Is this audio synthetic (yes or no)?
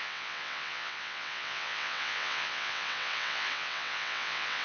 yes